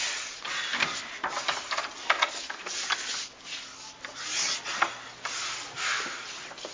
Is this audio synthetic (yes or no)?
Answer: no